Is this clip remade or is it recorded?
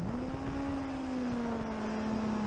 recorded